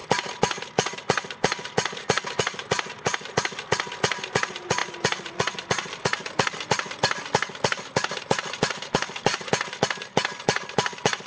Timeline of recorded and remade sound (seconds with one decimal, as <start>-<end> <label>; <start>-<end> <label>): 0.0-11.3 recorded

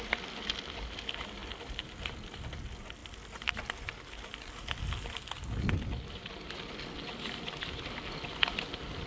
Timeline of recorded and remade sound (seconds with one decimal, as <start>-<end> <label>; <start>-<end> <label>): 0.0-1.4 recorded; 1.4-2.5 remade; 2.5-9.1 recorded

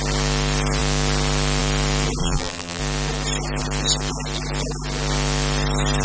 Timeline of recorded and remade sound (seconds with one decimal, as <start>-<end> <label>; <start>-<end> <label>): 0.0-2.2 recorded; 2.2-2.8 remade; 2.8-6.0 recorded